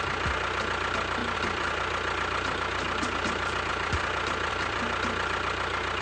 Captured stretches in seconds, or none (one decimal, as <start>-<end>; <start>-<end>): 0.0-1.2; 4.8-6.0